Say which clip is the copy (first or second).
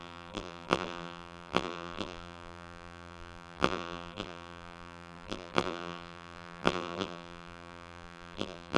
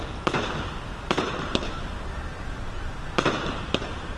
first